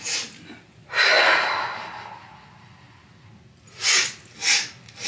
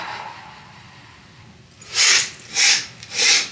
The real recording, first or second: first